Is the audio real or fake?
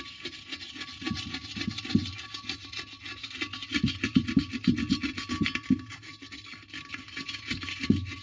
real